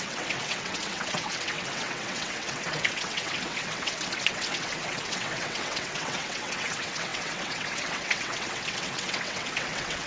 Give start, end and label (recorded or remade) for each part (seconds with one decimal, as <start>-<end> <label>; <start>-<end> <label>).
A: 0.0-10.1 remade